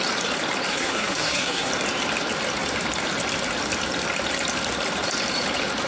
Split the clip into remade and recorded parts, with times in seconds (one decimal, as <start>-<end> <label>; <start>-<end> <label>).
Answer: 0.0-0.7 recorded; 0.7-1.7 remade; 1.7-5.9 recorded